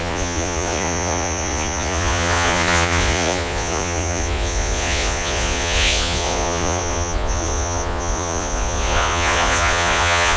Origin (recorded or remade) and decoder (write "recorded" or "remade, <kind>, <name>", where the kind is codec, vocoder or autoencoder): remade, vocoder, Vocos